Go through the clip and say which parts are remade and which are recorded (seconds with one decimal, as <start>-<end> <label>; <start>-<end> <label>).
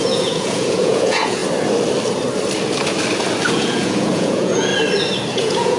0.0-1.4 remade; 1.4-3.5 recorded; 3.5-4.7 remade; 4.7-5.3 recorded; 5.3-5.8 remade